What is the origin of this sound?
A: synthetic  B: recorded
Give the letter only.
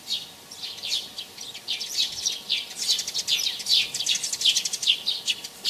B